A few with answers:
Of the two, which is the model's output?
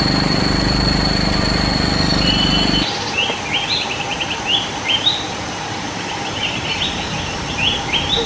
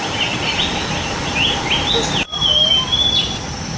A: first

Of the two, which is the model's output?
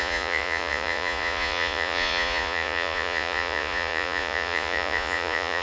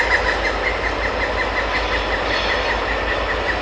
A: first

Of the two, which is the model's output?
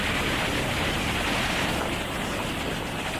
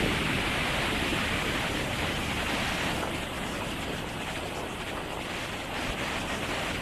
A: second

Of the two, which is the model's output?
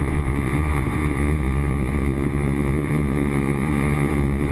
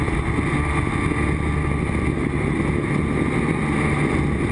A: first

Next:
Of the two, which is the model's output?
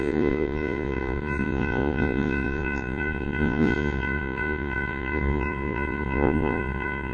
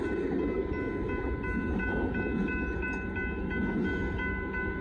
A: first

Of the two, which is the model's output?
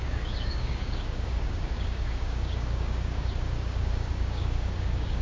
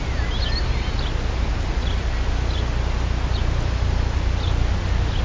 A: first